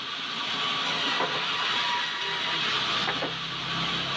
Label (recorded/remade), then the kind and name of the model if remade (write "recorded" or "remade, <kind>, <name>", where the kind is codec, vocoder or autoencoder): recorded